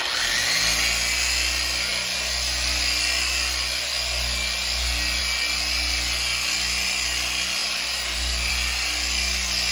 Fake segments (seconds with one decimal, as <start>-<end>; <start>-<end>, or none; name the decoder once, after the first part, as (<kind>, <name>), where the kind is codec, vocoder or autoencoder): 7.6-8.5 (vocoder, BigVGAN v2)